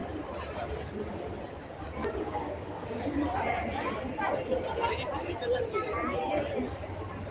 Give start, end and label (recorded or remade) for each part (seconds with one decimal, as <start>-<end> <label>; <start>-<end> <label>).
0.0-2.0 recorded; 2.0-3.1 remade; 3.1-7.3 recorded